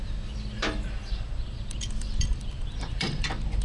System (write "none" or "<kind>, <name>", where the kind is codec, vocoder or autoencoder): vocoder, BigVGAN v2